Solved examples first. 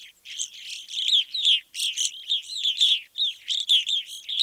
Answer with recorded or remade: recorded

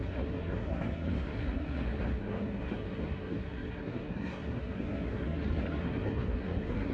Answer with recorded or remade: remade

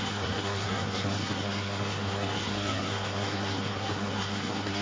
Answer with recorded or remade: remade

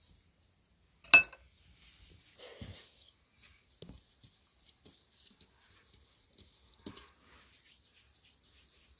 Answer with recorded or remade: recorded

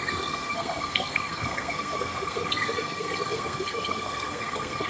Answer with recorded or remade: remade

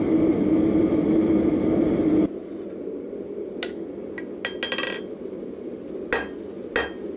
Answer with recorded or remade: recorded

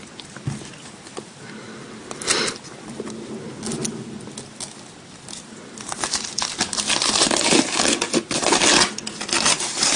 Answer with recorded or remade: recorded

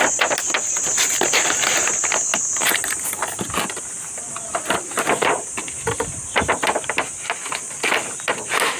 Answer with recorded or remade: recorded